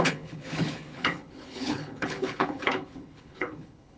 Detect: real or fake fake